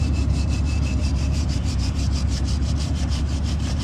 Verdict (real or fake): fake